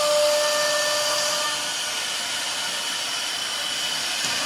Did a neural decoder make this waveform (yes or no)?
no